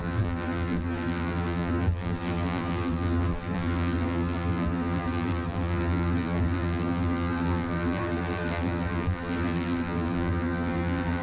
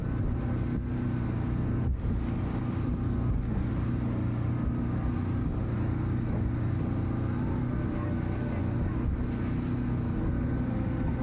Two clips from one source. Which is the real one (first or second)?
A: second